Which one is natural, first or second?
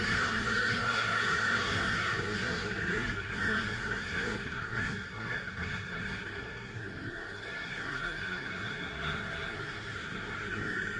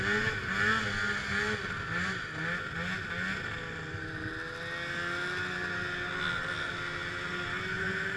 second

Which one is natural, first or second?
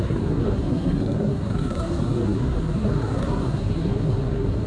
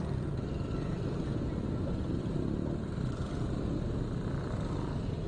second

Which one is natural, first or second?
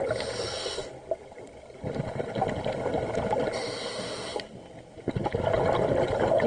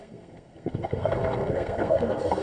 first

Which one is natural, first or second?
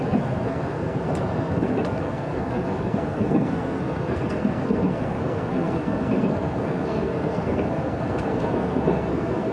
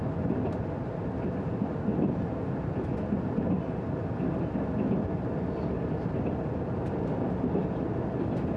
second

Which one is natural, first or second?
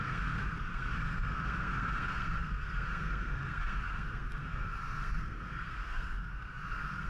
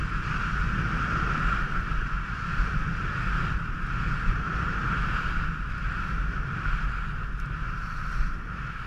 second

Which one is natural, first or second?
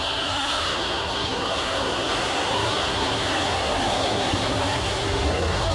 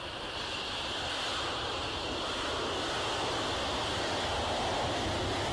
second